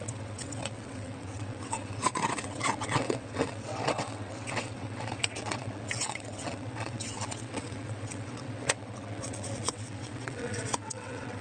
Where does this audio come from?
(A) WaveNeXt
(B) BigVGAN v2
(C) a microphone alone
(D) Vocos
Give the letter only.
A